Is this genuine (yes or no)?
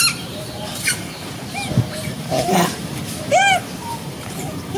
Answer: no